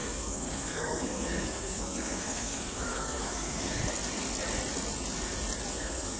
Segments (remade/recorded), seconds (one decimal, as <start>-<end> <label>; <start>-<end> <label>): 0.0-3.8 remade; 3.8-5.7 recorded; 5.7-6.2 remade